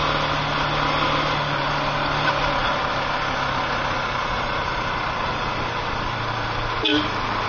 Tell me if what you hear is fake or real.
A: real